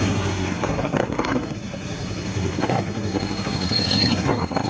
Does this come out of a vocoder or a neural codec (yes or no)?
yes